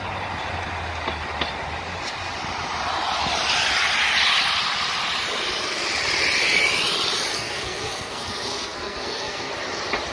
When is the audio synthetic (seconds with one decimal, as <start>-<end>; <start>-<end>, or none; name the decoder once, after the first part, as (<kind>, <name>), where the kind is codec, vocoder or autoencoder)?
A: 7.3-9.5 (codec, SNAC)